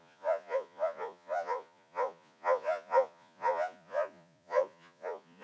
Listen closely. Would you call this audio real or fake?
fake